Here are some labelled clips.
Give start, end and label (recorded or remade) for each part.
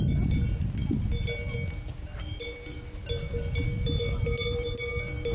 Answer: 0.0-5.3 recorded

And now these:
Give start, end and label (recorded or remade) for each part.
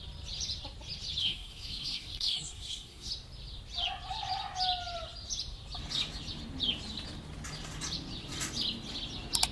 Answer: 0.0-1.2 recorded; 1.2-3.1 remade; 3.1-9.5 recorded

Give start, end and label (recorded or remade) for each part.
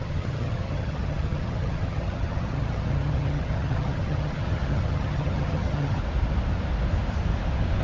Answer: 0.0-6.0 remade; 6.0-7.8 recorded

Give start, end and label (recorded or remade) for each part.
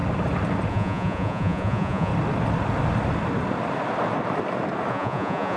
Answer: 0.0-0.7 recorded; 0.7-2.1 remade; 2.1-4.9 recorded; 4.9-5.6 remade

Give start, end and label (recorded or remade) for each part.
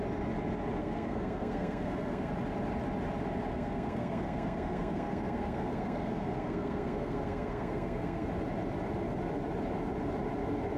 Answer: 0.0-0.8 recorded; 0.8-2.3 remade; 2.3-3.5 recorded; 3.5-8.3 remade; 8.3-10.8 recorded